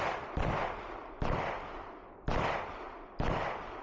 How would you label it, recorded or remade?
recorded